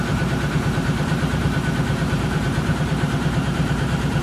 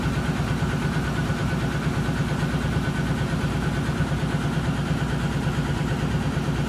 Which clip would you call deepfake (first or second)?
first